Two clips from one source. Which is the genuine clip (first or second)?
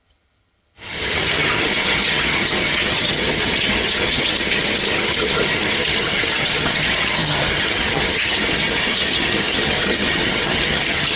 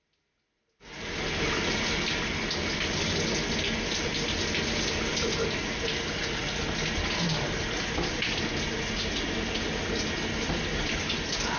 second